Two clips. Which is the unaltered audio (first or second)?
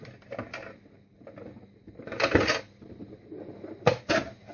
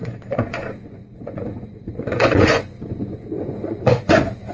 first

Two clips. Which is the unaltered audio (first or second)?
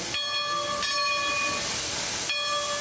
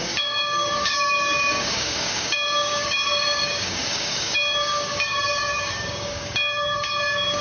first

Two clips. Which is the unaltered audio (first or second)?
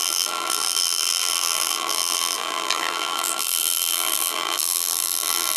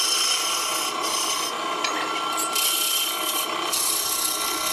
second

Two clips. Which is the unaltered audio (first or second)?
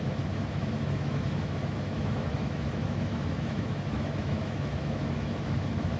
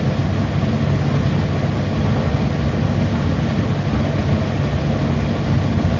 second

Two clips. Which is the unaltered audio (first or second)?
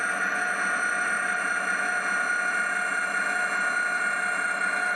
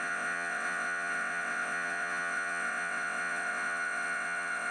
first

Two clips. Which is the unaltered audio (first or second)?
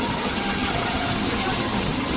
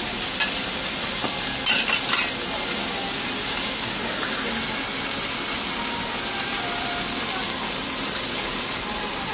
second